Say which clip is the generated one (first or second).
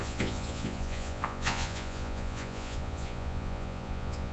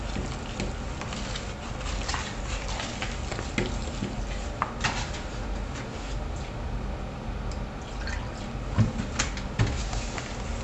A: first